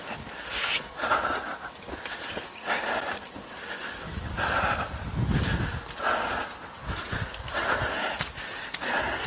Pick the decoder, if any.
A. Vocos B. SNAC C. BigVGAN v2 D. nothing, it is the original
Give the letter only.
D